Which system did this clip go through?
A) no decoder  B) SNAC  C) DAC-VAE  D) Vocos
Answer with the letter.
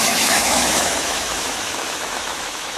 C